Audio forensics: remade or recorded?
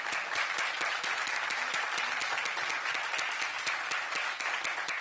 recorded